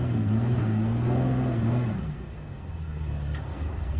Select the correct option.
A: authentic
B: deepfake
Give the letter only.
B